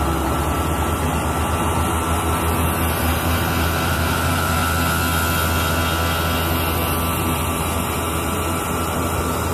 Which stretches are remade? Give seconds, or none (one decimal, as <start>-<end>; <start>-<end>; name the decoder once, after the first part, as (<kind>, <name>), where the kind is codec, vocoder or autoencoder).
0.0-1.1 (vocoder, BigVGAN v2); 3.0-4.6; 7.2-9.5